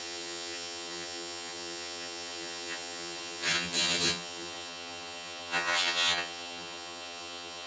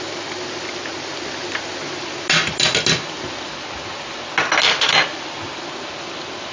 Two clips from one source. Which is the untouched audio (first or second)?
second